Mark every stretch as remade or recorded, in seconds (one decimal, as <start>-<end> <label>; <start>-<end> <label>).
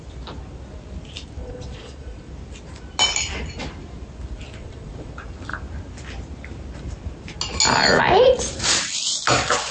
0.0-1.4 recorded; 1.4-2.3 remade; 2.3-4.6 recorded; 4.6-5.1 remade; 5.1-9.7 recorded